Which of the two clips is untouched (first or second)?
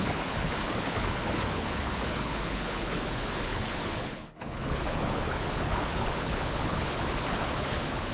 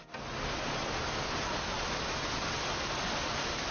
second